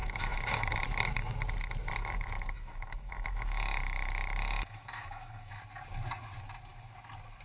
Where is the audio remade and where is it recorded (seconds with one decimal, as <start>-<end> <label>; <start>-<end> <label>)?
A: 0.0-0.8 remade; 0.8-2.0 recorded; 2.0-5.6 remade; 5.6-7.4 recorded

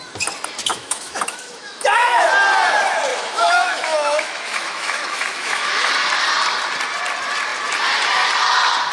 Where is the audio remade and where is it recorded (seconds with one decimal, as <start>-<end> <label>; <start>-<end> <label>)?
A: 0.0-0.7 recorded; 0.7-2.3 remade; 2.3-3.1 recorded; 3.1-5.9 remade; 5.9-8.9 recorded

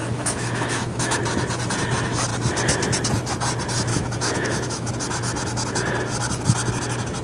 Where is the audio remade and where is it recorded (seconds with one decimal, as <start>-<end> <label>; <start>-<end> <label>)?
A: 0.0-1.2 remade; 1.2-3.9 recorded; 3.9-4.9 remade; 4.9-7.2 recorded

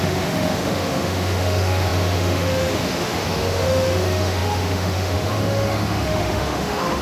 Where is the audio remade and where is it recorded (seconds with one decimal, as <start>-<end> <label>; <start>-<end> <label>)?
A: 0.0-7.0 remade

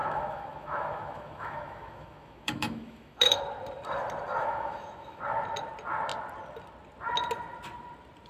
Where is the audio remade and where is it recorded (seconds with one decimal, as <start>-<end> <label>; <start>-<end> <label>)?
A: 0.0-3.4 remade; 3.4-4.4 recorded; 4.4-5.2 remade; 5.2-8.3 recorded

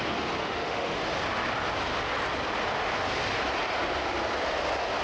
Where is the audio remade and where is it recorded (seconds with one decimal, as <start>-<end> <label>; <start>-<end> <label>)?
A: 0.0-0.4 recorded; 0.4-1.0 remade; 1.0-5.0 recorded